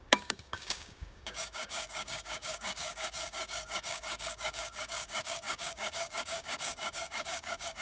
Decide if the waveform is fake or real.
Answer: fake